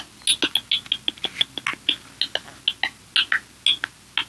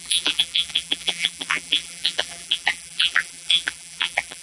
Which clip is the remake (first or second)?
second